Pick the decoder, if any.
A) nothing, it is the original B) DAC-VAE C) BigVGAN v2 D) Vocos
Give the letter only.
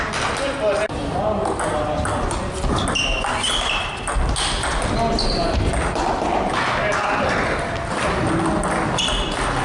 A